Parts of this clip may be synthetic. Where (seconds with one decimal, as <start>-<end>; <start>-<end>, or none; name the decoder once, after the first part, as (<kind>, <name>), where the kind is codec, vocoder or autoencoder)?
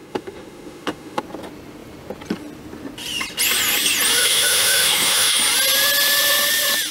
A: 0.0-1.2 (autoencoder, DAC-VAE); 4.2-5.4